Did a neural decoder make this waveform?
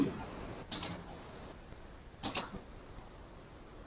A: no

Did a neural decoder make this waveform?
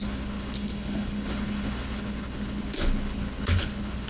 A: yes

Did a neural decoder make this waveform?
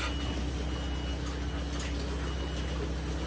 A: no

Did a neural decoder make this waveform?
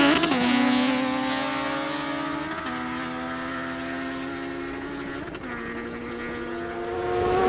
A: no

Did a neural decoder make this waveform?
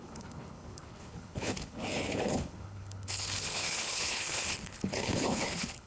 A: yes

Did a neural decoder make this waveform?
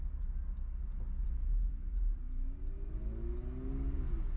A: no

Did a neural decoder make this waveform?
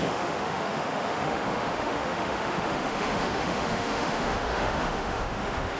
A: yes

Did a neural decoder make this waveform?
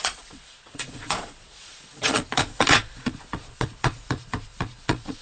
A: yes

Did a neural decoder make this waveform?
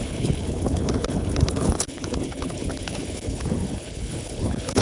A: yes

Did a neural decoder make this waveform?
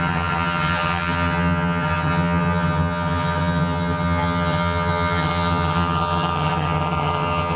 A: yes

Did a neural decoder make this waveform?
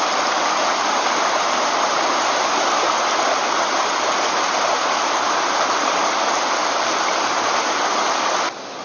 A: no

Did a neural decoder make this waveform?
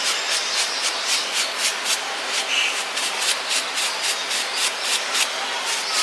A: no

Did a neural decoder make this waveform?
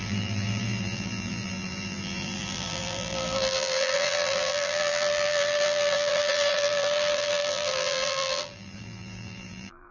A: yes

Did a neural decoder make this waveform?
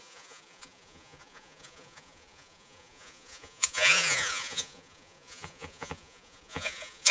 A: yes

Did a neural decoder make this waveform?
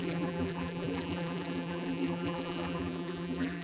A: yes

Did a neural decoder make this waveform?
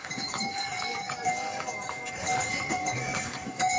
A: yes